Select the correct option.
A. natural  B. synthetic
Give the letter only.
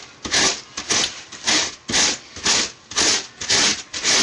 A